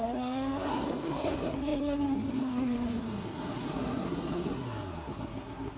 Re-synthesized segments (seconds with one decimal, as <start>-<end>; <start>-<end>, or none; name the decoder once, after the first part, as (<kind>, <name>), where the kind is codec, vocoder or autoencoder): 0.0-5.8 (codec, SNAC)